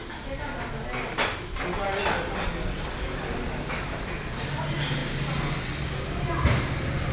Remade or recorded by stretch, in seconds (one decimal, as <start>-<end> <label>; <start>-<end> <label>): 0.0-7.1 recorded